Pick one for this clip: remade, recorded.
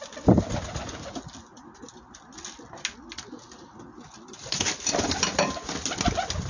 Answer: recorded